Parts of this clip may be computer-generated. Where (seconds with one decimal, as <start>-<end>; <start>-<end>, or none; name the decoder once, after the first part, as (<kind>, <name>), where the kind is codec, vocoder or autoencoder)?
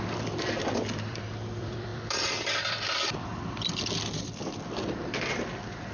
0.0-5.9 (vocoder, BigVGAN v2)